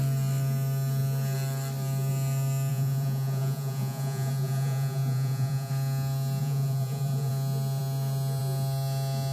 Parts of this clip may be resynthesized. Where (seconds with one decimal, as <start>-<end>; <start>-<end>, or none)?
2.7-5.7; 6.4-7.3